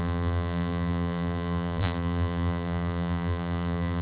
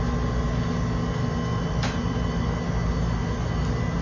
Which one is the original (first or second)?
second